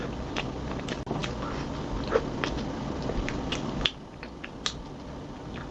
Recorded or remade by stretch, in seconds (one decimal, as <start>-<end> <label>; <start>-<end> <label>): 0.0-5.7 recorded